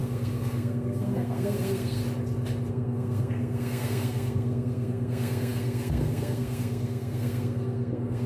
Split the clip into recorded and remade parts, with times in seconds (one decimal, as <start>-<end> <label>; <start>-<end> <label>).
0.0-2.0 remade; 2.0-2.7 recorded; 2.7-8.3 remade